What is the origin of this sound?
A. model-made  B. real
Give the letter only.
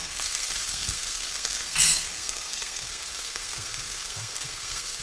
A